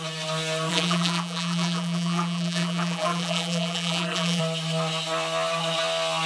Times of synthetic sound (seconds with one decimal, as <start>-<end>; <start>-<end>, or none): 0.7-4.4

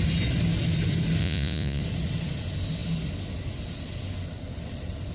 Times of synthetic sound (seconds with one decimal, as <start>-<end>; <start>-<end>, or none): 1.2-1.8

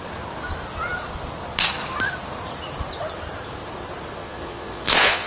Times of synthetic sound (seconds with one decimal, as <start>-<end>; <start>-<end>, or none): 4.2-5.3

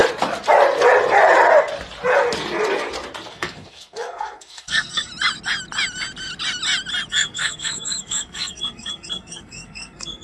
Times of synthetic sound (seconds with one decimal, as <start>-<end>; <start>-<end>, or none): 3.3-5.1; 7.1-10.2

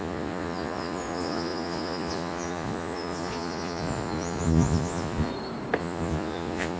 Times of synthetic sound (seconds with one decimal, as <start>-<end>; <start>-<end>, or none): 0.0-5.3; 5.8-6.8